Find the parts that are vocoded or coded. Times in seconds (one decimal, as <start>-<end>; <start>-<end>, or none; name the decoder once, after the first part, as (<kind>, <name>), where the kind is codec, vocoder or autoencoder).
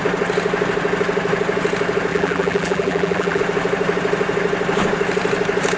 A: 2.1-3.4 (vocoder, BigVGAN v2)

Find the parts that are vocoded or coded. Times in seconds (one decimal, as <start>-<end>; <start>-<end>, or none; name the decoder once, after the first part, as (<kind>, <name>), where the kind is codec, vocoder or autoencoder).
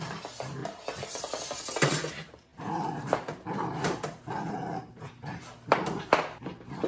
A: 0.0-0.6 (vocoder, BigVGAN v2); 2.1-6.9